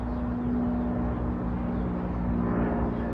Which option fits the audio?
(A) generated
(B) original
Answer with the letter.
B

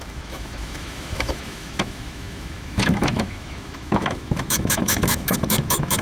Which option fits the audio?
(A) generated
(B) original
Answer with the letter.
A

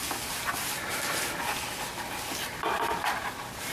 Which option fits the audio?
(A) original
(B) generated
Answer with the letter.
A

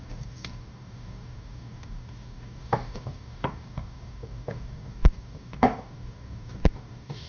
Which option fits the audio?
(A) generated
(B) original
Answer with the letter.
A